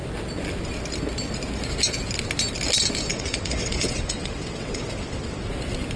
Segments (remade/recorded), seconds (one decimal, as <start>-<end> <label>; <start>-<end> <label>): 0.0-3.1 recorded; 3.1-5.5 remade; 5.5-6.0 recorded